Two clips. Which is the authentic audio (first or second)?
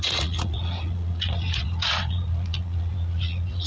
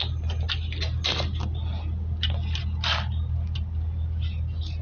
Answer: second